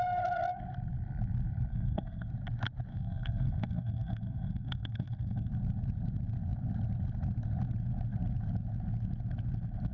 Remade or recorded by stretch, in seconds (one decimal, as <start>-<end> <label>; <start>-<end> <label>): 0.0-1.7 recorded; 1.7-2.3 remade; 2.3-2.9 recorded; 2.9-5.5 remade; 5.5-9.9 recorded

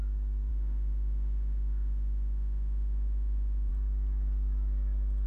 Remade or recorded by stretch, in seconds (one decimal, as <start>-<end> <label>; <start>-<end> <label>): 0.0-0.5 recorded; 0.5-3.7 remade; 3.7-5.3 recorded